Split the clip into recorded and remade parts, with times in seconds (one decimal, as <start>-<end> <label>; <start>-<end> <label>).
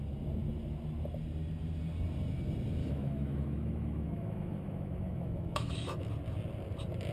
0.0-2.8 recorded; 2.8-6.1 remade; 6.1-7.1 recorded